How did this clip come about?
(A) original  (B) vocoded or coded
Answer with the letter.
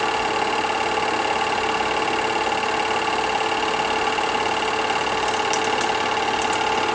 A